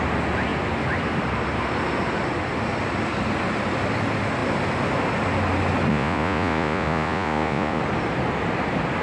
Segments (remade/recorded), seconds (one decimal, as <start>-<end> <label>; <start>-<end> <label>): 0.0-5.9 recorded; 5.9-7.8 remade; 7.8-9.0 recorded